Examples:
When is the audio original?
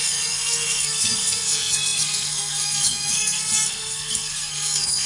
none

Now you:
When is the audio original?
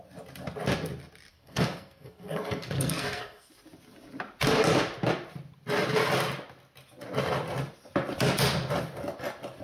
0.0-1.3; 3.5-9.6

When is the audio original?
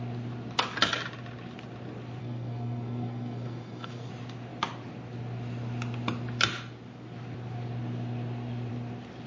0.0-2.2; 4.1-9.3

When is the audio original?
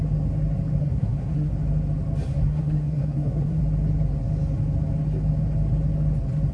0.0-0.8; 1.5-2.3; 3.6-6.5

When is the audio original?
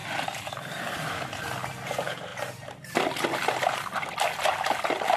0.0-5.2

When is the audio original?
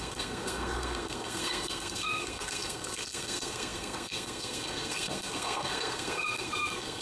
none